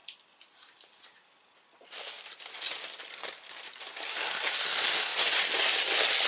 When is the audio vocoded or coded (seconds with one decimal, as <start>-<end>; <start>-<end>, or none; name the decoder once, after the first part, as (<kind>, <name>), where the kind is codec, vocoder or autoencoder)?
none